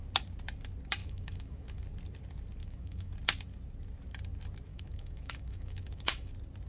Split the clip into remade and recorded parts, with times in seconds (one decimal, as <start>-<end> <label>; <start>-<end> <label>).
0.0-1.0 recorded; 1.0-1.8 remade; 1.8-2.6 recorded; 2.6-3.1 remade; 3.1-4.7 recorded; 4.7-6.3 remade; 6.3-6.7 recorded